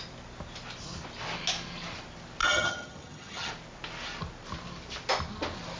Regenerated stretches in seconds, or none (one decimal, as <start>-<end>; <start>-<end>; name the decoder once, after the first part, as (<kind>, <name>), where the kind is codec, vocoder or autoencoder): 2.4-3.5 (vocoder, HiFi-GAN)